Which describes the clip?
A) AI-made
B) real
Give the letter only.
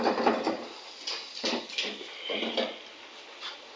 B